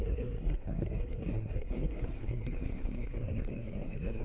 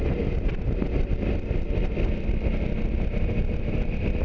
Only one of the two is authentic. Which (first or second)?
second